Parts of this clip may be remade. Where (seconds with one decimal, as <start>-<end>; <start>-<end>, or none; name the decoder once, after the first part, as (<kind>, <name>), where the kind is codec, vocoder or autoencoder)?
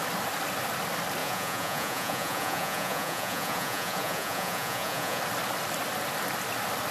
1.2-5.2 (vocoder, Vocos)